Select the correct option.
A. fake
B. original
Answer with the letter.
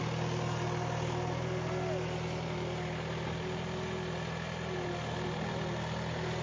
B